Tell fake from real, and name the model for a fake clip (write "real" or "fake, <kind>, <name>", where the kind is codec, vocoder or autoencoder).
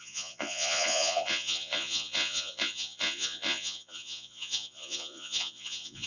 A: fake, vocoder, Vocos